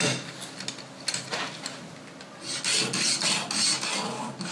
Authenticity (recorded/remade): recorded